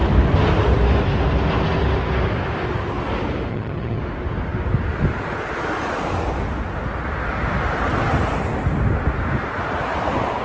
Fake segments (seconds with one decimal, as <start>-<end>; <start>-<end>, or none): 3.5-4.0